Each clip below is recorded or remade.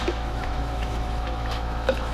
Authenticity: remade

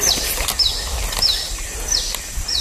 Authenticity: recorded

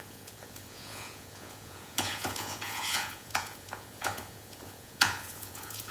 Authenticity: remade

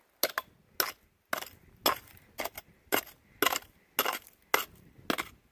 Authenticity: recorded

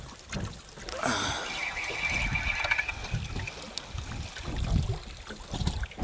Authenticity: recorded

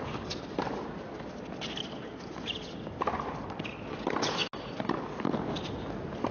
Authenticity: recorded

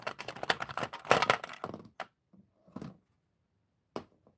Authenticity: recorded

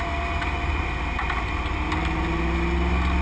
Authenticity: recorded